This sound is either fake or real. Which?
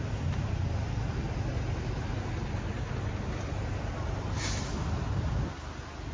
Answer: real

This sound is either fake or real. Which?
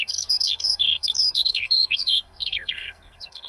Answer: fake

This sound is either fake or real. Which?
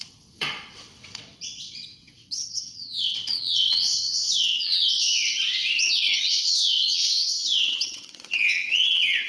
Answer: fake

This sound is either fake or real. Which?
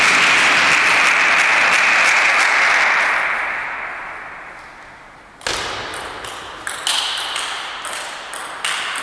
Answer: real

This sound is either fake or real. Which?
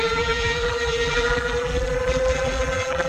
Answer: fake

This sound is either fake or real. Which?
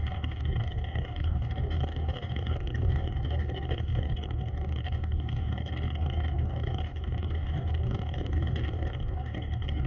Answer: fake